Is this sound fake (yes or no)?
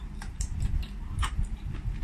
yes